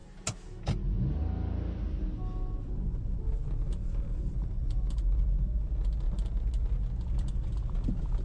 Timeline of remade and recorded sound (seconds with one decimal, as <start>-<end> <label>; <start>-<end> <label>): 0.0-4.3 recorded; 4.3-5.7 remade; 5.7-8.2 recorded